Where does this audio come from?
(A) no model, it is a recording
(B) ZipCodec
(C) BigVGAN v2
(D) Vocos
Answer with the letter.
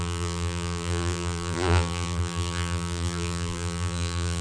C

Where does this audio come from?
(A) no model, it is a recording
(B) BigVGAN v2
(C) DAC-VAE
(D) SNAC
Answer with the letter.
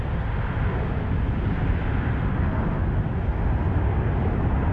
A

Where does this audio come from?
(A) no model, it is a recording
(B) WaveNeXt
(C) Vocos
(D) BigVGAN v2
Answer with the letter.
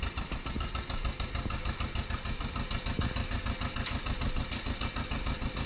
A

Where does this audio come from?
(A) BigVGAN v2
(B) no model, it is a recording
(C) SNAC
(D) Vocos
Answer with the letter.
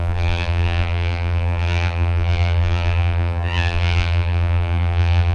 A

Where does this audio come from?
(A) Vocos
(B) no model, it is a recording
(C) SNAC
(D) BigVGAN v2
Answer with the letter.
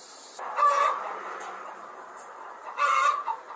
B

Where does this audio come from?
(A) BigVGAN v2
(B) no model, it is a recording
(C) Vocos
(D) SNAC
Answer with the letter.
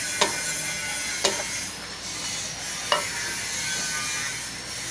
B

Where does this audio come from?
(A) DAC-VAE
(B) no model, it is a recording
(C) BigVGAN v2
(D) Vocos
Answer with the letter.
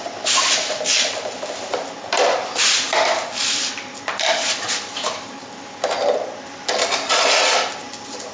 C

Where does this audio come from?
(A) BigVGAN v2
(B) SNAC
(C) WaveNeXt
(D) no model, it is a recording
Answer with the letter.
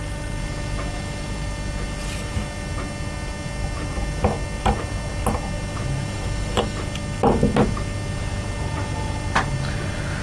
D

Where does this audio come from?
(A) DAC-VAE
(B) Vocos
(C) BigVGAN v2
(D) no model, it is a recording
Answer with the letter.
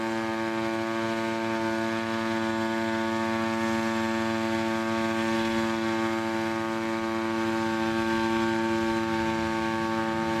D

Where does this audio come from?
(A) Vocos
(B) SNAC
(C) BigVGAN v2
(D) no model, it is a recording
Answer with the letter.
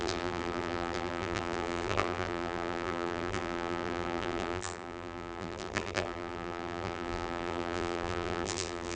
C